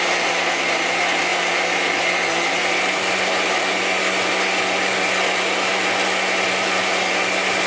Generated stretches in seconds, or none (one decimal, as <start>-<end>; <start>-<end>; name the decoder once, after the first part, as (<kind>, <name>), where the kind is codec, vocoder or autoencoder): none

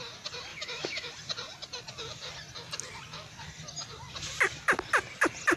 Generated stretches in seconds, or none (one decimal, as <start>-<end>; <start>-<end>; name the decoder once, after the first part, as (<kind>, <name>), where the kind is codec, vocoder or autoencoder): 0.5-1.1 (autoencoder, DAC-VAE)

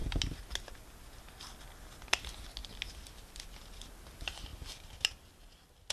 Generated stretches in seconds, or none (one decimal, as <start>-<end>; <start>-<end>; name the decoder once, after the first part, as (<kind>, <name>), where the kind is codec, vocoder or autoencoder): none

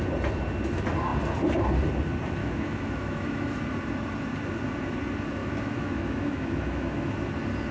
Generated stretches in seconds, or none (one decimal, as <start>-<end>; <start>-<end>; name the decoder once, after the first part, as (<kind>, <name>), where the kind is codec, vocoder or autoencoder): 2.4-3.6 (autoencoder, DAC-VAE); 5.4-7.1

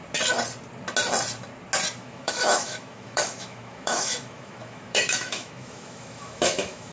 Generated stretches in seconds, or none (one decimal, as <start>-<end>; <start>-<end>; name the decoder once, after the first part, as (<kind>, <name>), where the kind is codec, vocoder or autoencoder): 2.0-6.9 (autoencoder, DAC-VAE)

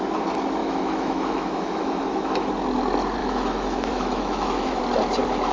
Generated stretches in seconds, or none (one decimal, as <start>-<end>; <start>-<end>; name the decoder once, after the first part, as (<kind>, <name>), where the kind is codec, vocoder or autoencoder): 0.6-2.5 (autoencoder, DAC-VAE); 3.2-4.8

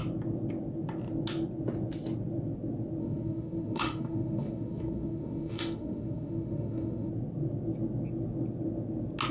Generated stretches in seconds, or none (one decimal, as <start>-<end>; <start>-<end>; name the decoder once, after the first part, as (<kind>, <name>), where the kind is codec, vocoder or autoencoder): 3.0-7.1 (autoencoder, DAC-VAE)

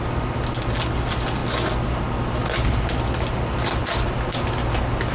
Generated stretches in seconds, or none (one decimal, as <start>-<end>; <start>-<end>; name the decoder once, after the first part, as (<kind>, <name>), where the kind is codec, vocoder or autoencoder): none